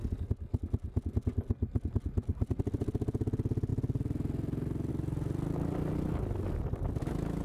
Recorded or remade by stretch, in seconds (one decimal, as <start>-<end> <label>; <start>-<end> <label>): 0.0-7.4 recorded